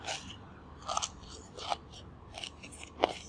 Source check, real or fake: real